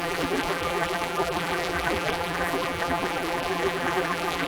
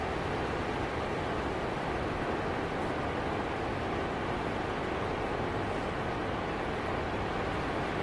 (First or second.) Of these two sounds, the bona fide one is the second